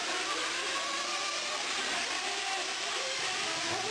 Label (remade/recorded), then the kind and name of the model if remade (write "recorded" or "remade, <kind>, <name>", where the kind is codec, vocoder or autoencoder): remade, vocoder, BigVGAN v2